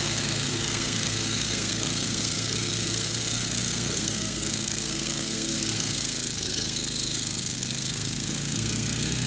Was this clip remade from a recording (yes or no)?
yes